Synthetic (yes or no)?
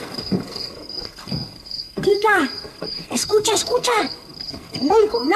yes